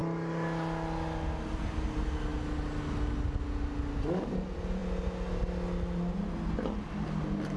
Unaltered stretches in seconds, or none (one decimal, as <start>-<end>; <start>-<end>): 0.0-7.6